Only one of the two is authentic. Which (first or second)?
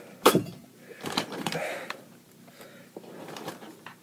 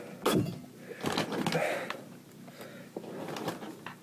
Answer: second